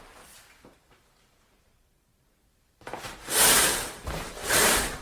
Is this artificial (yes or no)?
yes